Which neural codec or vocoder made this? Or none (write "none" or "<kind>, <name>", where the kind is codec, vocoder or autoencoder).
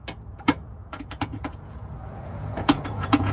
vocoder, Vocos